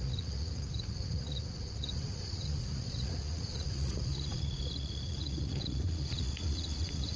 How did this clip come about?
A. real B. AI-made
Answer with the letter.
B